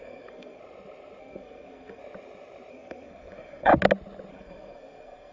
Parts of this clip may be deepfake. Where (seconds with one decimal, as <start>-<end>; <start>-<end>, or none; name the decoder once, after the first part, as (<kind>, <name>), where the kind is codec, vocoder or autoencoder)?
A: 0.0-0.6 (codec, SNAC); 1.2-2.0; 2.7-3.7; 4.3-5.3